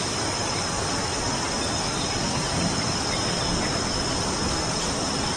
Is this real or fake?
real